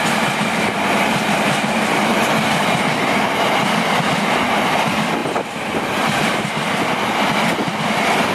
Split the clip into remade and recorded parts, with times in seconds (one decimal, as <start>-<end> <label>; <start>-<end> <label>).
0.0-5.2 recorded; 5.2-5.8 remade; 5.8-8.3 recorded